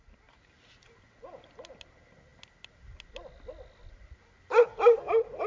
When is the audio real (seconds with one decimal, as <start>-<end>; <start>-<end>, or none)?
0.0-5.5